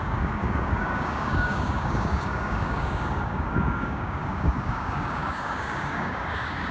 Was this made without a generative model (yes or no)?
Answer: no